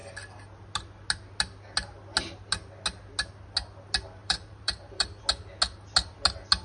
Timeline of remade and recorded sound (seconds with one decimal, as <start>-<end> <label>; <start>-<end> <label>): 0.0-4.2 recorded; 4.2-5.2 remade; 5.2-6.6 recorded

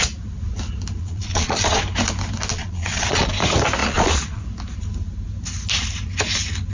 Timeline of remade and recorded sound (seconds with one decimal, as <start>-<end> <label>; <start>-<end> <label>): 0.0-1.0 recorded; 1.0-1.8 remade; 1.8-2.5 recorded; 2.5-3.3 remade; 3.3-3.8 recorded; 3.8-4.4 remade; 4.4-6.7 recorded

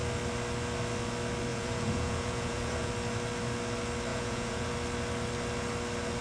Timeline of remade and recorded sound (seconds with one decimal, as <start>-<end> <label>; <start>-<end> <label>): 0.0-1.5 recorded; 1.5-2.9 remade; 2.9-4.1 recorded; 4.1-4.7 remade; 4.7-6.2 recorded

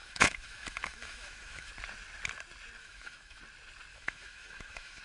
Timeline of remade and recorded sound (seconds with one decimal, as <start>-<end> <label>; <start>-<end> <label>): 0.0-1.7 remade; 1.7-2.8 recorded; 2.8-3.4 remade; 3.4-3.9 recorded; 3.9-5.0 remade

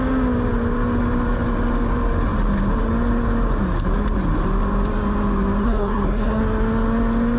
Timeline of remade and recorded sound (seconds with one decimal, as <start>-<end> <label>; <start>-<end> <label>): 0.0-5.6 recorded; 5.6-6.4 remade; 6.4-7.4 recorded

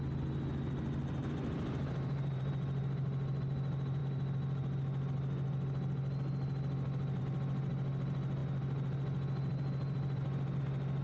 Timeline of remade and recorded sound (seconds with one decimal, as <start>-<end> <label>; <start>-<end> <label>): 0.0-1.2 recorded; 1.2-2.5 remade; 2.5-11.0 recorded